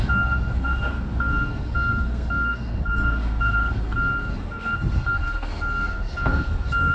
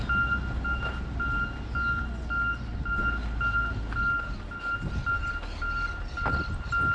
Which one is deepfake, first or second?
first